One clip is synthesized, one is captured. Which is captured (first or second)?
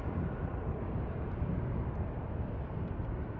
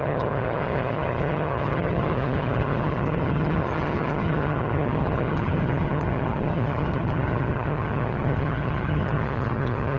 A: first